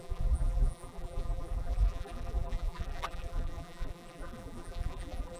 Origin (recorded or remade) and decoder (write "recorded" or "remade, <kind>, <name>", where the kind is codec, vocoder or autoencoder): remade, vocoder, BigVGAN v2